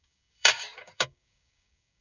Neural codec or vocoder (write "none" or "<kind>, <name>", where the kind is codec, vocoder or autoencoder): codec, DAC